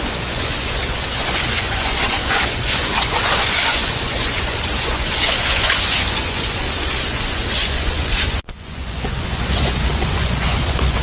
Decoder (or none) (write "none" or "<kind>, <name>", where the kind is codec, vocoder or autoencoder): vocoder, Vocos